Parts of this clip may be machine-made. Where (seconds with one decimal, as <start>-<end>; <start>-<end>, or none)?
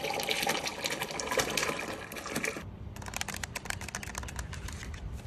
0.7-3.9